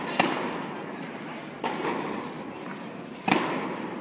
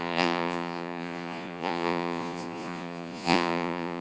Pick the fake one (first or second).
second